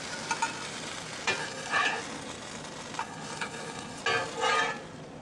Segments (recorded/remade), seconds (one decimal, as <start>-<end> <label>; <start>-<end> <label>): 0.0-1.4 recorded; 1.4-2.0 remade; 2.0-3.0 recorded; 3.0-4.0 remade; 4.0-5.2 recorded

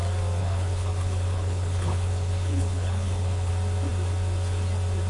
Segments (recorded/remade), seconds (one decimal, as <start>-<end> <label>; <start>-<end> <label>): 0.0-0.4 recorded; 0.4-3.5 remade; 3.5-5.1 recorded

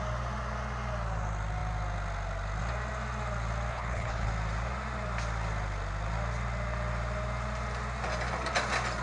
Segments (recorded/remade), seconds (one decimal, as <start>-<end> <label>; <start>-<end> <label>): 0.0-3.7 recorded; 3.7-4.3 remade; 4.3-9.0 recorded

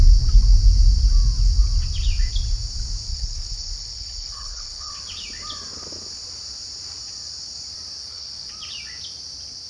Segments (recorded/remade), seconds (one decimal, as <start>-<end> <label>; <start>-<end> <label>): 0.0-3.1 recorded; 3.1-4.9 remade; 4.9-8.0 recorded; 8.0-8.5 remade; 8.5-9.7 recorded

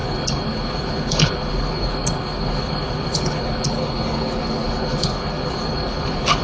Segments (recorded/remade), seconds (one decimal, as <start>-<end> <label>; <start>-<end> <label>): 0.0-6.4 remade

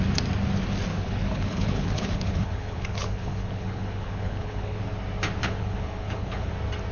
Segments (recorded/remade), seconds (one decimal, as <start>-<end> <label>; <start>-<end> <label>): 0.0-0.9 recorded; 0.9-4.8 remade; 4.8-5.4 recorded; 5.4-6.5 remade; 6.5-6.9 recorded

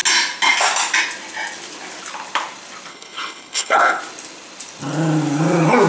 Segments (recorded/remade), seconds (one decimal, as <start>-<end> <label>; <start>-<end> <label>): 0.0-2.9 recorded; 2.9-4.0 remade; 4.0-5.9 recorded